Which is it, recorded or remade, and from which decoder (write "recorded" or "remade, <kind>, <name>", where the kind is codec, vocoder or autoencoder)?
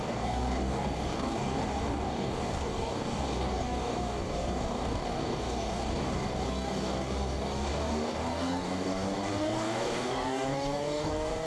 remade, codec, DAC